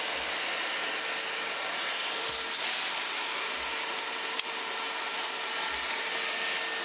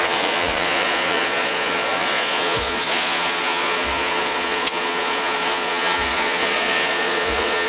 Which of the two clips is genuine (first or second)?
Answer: first